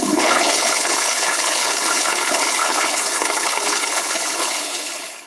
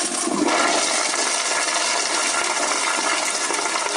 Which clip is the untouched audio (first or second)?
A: second